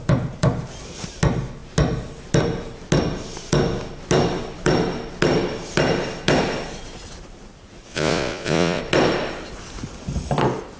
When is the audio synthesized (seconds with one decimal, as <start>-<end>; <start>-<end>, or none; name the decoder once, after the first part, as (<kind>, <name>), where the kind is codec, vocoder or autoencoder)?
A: 7.9-8.8 (vocoder, Vocos)